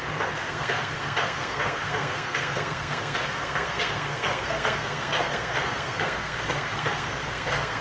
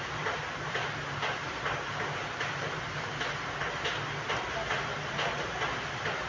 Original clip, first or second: second